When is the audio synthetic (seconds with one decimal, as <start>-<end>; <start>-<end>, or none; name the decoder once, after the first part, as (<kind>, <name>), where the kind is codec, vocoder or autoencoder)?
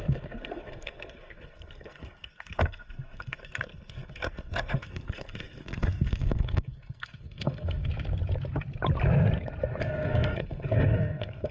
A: 0.0-7.8 (codec, SNAC); 9.8-11.5